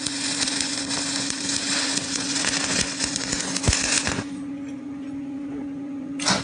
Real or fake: fake